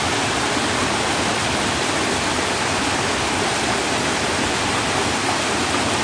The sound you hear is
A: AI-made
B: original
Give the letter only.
B